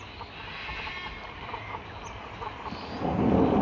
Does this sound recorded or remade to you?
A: recorded